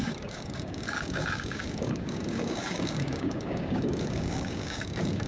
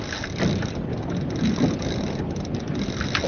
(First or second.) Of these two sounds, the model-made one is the first